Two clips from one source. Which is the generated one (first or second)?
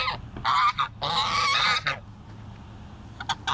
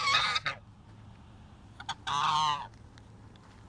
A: second